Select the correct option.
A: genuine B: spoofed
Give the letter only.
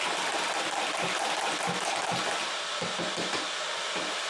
A